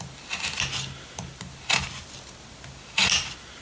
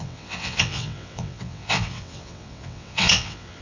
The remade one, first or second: second